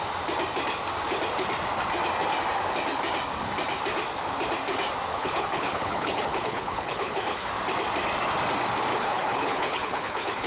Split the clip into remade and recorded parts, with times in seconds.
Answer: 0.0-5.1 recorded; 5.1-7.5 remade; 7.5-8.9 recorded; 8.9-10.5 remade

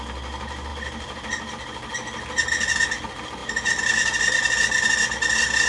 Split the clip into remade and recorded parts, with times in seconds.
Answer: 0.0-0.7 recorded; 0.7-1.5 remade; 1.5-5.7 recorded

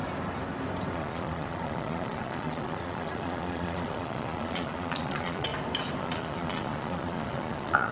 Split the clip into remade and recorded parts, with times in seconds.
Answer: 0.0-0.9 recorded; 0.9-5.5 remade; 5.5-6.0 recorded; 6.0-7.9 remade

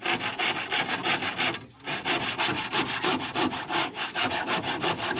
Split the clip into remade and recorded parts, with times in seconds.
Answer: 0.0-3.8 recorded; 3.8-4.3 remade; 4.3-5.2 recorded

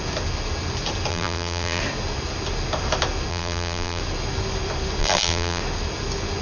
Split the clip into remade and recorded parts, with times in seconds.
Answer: 0.0-1.1 recorded; 1.1-1.8 remade; 1.8-3.3 recorded; 3.3-4.0 remade; 4.0-5.0 recorded; 5.0-5.6 remade; 5.6-6.4 recorded